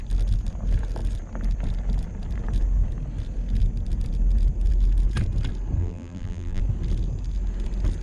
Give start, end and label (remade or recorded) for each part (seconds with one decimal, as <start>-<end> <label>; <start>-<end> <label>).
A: 0.0-5.8 recorded; 5.8-6.6 remade; 6.6-8.0 recorded